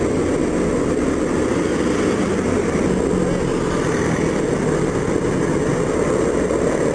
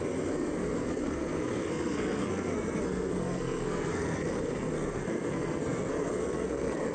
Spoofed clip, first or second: second